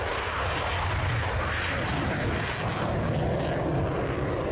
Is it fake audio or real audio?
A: real